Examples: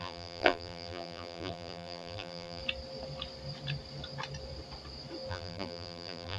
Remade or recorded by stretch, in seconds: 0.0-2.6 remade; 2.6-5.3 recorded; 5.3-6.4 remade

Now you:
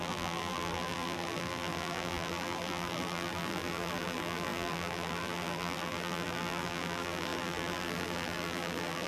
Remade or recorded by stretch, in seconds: 0.0-9.1 remade

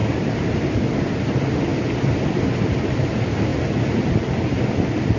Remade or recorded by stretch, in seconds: 0.0-5.2 recorded